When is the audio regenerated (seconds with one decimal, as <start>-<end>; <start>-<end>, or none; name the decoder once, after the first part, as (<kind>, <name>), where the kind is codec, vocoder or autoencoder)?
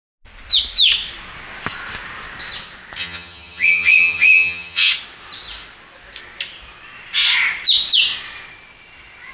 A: 3.0-4.9 (vocoder, HiFi-GAN)